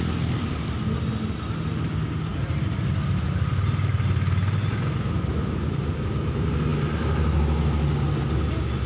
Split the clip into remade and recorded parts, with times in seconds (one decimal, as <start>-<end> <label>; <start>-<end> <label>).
0.0-8.9 recorded